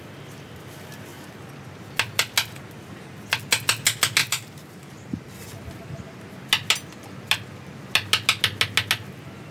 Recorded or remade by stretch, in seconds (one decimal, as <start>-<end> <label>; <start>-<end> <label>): 0.0-4.2 recorded; 4.2-5.4 remade; 5.4-9.5 recorded